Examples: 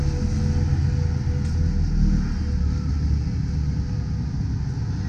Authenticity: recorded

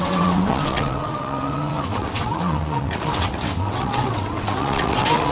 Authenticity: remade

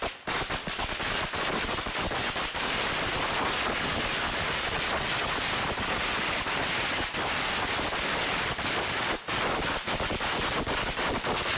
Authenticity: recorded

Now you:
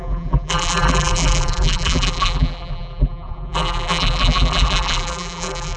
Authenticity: remade